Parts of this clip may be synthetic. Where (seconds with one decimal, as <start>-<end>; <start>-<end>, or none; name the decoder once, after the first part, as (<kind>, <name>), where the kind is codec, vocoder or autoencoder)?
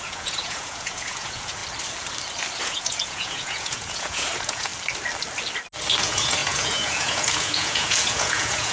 0.0-1.6 (vocoder, Vocos); 2.6-4.7; 6.0-8.7